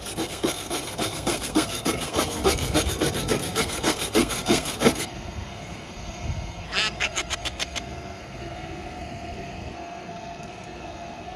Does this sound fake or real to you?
fake